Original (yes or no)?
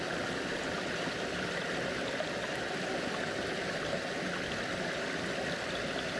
yes